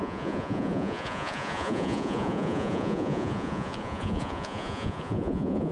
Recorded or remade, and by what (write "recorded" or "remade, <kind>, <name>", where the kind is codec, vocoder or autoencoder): remade, vocoder, Vocos